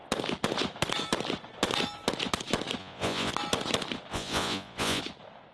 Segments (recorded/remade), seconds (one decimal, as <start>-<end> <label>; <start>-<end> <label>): 0.0-2.8 recorded; 2.8-3.3 remade; 3.3-4.1 recorded; 4.1-5.0 remade; 5.0-5.5 recorded